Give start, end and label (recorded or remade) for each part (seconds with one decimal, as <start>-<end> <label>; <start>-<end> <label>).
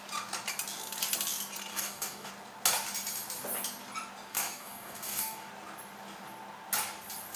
0.0-1.7 recorded; 1.7-2.3 remade; 2.3-4.3 recorded; 4.3-5.5 remade; 5.5-7.4 recorded